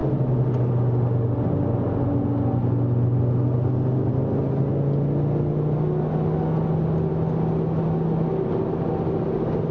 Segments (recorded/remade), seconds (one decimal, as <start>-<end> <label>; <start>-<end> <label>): 0.0-9.7 recorded